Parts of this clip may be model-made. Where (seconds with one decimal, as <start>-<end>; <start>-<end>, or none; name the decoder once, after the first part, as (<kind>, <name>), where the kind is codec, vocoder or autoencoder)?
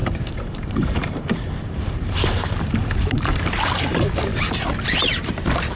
0.0-3.5 (vocoder, BigVGAN v2)